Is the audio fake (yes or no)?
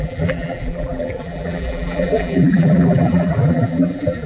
yes